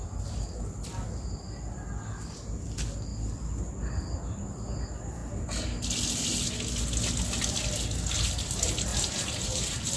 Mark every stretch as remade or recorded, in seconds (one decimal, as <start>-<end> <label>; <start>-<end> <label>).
0.0-8.9 recorded; 8.9-10.0 remade